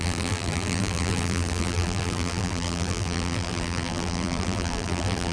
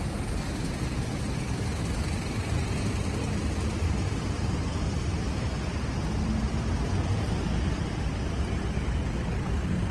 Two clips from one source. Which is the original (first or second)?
second